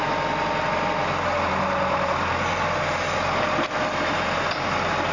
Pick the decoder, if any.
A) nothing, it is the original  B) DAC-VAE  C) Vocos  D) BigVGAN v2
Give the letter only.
A